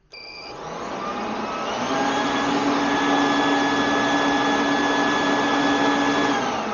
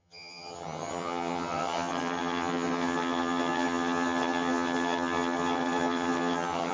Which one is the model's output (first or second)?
second